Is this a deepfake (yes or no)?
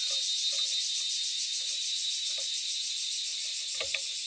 no